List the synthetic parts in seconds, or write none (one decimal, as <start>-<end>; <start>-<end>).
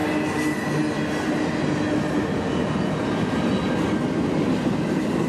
none